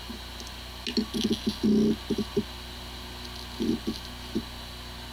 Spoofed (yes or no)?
no